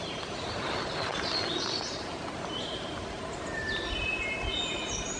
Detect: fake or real real